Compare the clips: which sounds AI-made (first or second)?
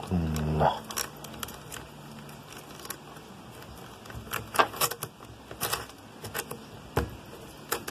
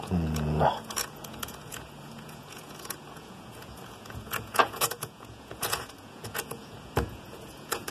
second